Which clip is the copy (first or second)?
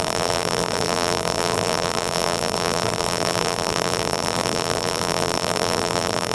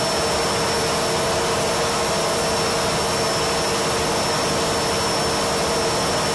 first